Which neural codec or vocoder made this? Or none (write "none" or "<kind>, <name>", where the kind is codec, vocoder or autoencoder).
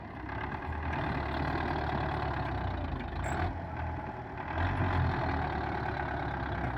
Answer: none